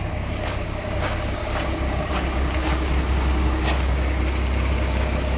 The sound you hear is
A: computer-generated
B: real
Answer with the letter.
A